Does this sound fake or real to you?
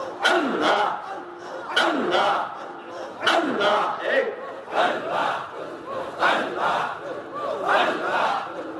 real